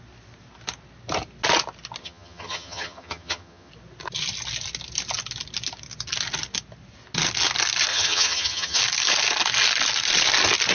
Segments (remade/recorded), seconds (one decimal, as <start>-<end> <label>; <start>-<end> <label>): 0.0-2.0 recorded; 2.0-3.7 remade; 3.7-7.9 recorded; 7.9-8.8 remade; 8.8-10.7 recorded

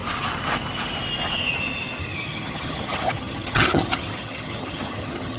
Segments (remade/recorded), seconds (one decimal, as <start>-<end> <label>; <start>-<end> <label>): 0.0-2.0 recorded; 2.0-5.4 remade